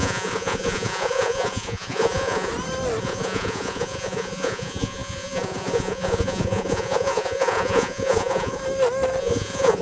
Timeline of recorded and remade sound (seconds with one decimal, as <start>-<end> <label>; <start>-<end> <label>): 0.0-2.5 remade; 2.5-3.0 recorded; 3.0-8.6 remade; 8.6-9.2 recorded; 9.2-9.8 remade